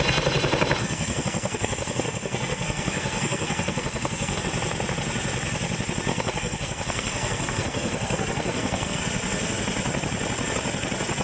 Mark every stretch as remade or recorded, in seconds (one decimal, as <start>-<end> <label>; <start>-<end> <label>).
0.0-0.8 recorded; 0.8-4.4 remade; 4.4-6.1 recorded; 6.1-9.0 remade; 9.0-11.2 recorded